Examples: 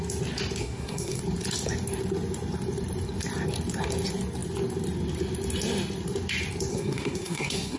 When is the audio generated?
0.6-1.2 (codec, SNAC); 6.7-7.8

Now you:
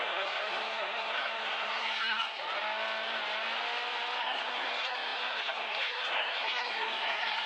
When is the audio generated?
0.0-2.4 (codec, SNAC); 4.2-7.5

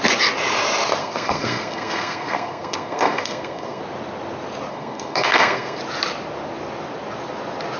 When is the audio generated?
1.0-3.8 (codec, SNAC); 4.7-5.8

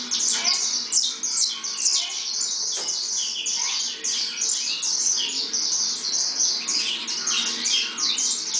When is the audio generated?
none

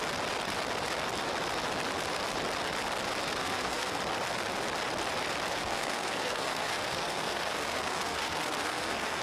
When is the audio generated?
3.4-4.0 (codec, SNAC); 5.5-9.2

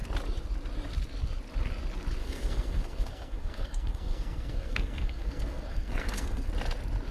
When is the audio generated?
2.2-6.5 (codec, SNAC)

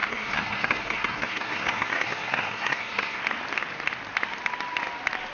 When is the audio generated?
0.0-3.2 (codec, SNAC)

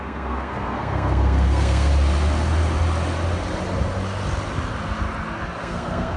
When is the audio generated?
0.0-1.9 (codec, SNAC); 5.6-6.2